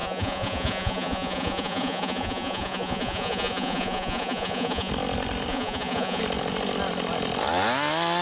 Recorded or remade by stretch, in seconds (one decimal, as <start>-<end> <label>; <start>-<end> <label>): 0.0-4.9 remade; 4.9-5.5 recorded; 5.5-6.2 remade; 6.2-8.2 recorded